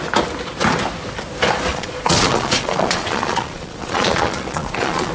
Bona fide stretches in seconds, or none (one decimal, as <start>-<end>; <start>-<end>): 0.0-1.7